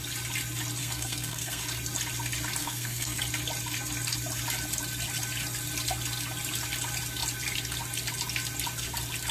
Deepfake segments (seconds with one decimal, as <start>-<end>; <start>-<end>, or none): 0.8-1.6; 2.6-3.2